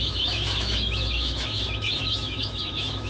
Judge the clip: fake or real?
fake